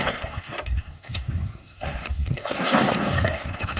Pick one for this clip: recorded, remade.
remade